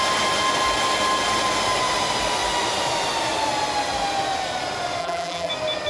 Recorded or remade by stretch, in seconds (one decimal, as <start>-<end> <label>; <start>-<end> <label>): 0.0-5.0 recorded; 5.0-5.5 remade; 5.5-5.9 recorded